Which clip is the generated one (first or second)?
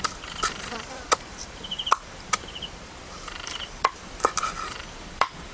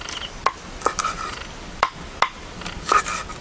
first